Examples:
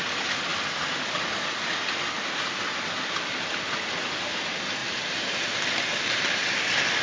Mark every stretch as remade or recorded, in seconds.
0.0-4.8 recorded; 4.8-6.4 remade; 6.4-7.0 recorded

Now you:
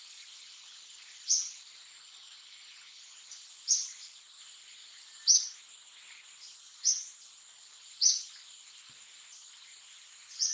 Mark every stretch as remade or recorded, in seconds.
0.0-10.5 recorded

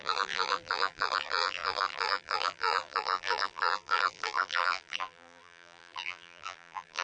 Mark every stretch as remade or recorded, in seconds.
0.0-7.0 remade